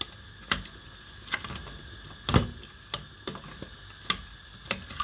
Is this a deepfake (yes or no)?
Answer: no